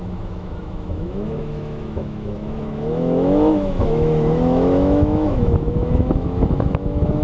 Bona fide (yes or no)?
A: no